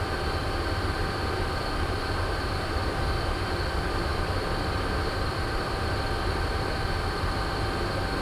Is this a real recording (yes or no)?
yes